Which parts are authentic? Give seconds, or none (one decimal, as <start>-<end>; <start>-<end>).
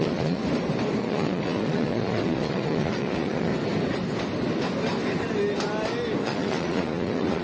0.4-1.0; 3.5-6.2